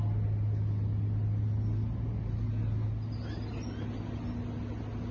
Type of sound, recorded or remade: recorded